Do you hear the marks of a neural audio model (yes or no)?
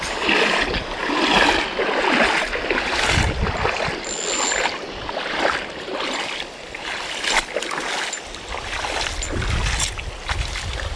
no